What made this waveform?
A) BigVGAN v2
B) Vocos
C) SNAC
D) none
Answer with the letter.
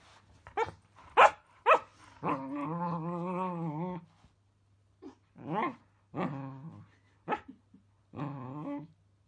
D